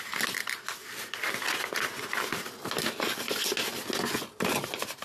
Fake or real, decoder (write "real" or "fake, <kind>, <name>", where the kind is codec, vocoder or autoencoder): real